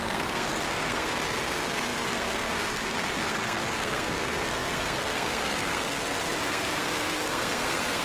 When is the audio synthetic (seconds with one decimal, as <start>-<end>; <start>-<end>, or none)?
0.0-8.0